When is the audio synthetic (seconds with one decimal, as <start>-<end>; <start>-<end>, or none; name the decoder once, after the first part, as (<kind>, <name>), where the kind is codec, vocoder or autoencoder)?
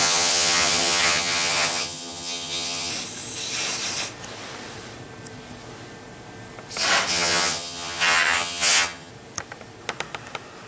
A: 0.0-2.9 (vocoder, HiFi-GAN); 7.1-9.1